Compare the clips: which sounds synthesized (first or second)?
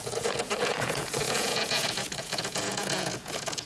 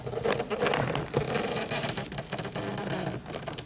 first